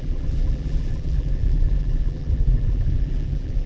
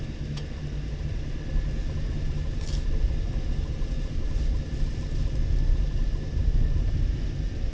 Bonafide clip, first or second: second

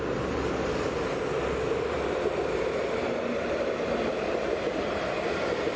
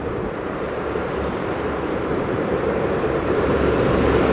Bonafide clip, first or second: first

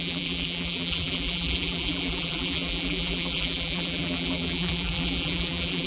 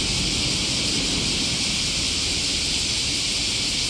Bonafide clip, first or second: second